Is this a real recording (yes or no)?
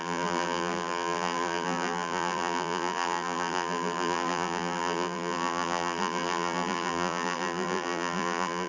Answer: no